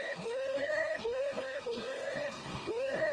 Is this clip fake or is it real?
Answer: fake